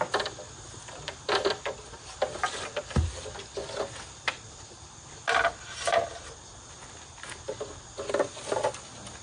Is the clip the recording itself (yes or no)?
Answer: yes